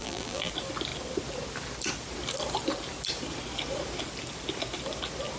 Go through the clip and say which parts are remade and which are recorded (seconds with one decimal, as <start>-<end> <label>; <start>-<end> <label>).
0.0-0.5 remade; 0.5-5.4 recorded